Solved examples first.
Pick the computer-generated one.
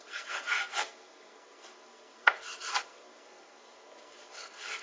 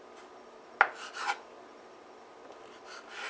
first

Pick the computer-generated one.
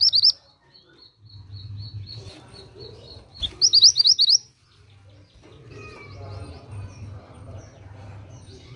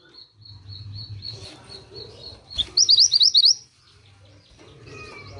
second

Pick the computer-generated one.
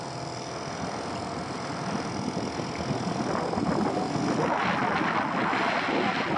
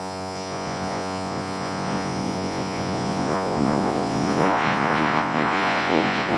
second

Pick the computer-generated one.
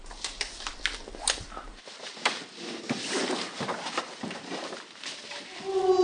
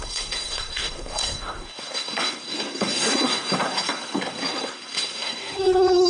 second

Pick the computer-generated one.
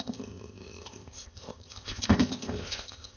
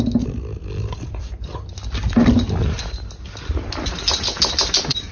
first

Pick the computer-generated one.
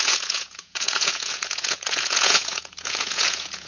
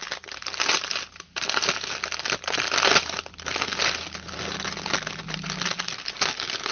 first